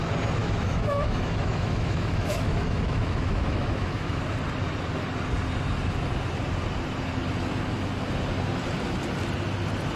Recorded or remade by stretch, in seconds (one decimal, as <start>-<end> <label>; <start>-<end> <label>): 0.0-0.4 recorded; 0.4-4.2 remade; 4.2-10.0 recorded